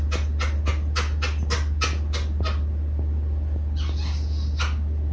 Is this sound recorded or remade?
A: recorded